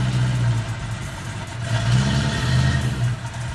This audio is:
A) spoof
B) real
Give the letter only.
B